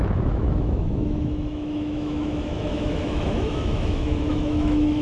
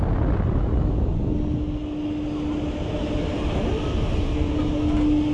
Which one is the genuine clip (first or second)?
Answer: second